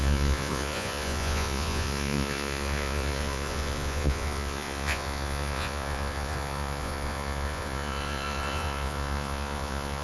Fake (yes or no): yes